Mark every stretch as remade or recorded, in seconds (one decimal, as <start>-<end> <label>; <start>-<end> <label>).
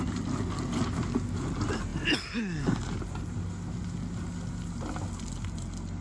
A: 0.0-6.0 recorded